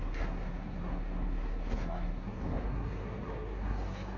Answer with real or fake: fake